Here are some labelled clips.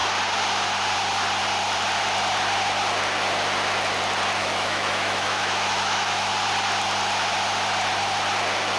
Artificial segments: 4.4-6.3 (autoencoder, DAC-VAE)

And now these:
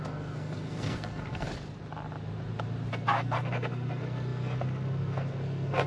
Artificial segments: 0.0-1.5 (codec, SNAC); 2.9-5.9

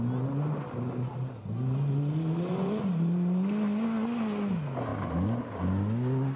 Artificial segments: none

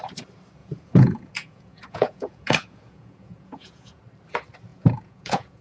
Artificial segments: 0.6-4.0 (vocoder, Vocos); 4.7-5.6

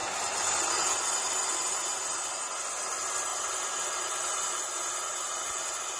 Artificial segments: none

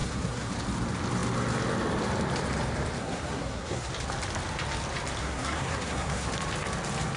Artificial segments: 0.0-0.5 (codec, SNAC); 3.0-3.9; 5.2-6.3